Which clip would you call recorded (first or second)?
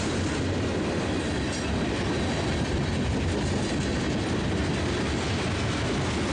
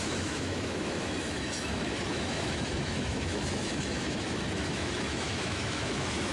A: first